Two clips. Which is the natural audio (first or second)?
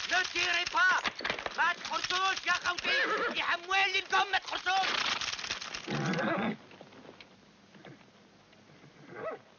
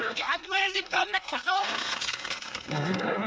first